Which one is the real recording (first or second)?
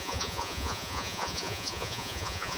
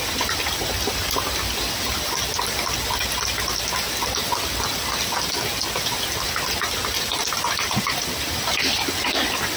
second